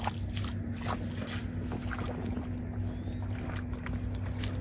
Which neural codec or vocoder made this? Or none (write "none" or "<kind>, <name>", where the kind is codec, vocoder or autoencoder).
none